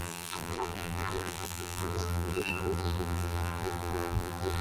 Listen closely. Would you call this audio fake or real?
fake